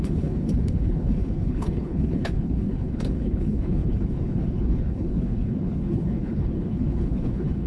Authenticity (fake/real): fake